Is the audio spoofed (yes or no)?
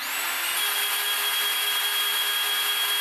no